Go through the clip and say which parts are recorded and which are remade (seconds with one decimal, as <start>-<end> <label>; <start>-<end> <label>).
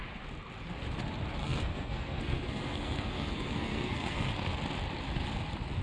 0.0-1.4 recorded; 1.4-4.3 remade; 4.3-5.8 recorded